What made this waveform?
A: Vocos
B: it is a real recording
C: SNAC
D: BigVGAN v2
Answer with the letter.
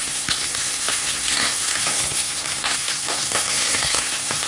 C